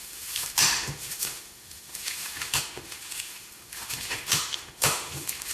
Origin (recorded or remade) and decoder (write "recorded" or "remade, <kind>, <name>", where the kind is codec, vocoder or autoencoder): remade, autoencoder, DAC-VAE